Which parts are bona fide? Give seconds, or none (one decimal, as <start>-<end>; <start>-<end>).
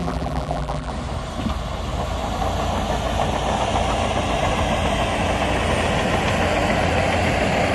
0.9-7.7